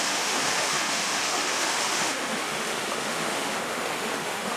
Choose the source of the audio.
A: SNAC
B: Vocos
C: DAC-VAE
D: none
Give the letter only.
C